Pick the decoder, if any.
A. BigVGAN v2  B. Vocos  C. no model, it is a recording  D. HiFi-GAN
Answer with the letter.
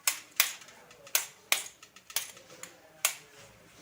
C